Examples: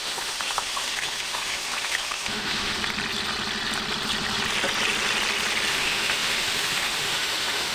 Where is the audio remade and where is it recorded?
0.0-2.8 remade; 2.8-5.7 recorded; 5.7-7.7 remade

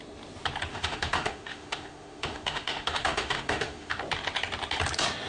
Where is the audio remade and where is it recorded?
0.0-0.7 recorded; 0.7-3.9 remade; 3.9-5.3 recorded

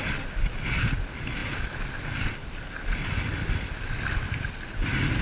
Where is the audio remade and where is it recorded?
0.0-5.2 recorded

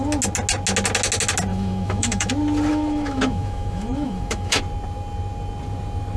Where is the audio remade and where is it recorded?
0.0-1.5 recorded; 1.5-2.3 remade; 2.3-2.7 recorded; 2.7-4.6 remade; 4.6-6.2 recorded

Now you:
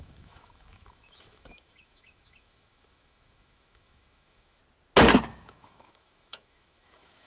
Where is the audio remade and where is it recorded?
0.0-4.6 remade; 4.6-5.3 recorded; 5.3-7.3 remade